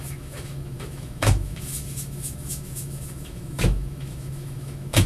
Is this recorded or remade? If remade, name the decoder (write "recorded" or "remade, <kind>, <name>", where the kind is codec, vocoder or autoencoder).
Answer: remade, autoencoder, DAC-VAE